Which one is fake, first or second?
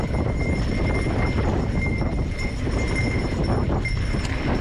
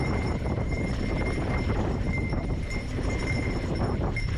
second